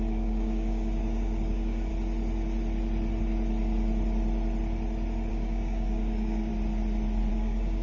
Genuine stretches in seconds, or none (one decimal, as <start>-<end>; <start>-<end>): 1.9-5.3; 6.5-7.3

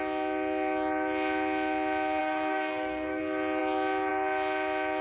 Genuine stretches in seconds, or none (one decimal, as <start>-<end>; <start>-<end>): 0.0-2.2; 3.2-5.0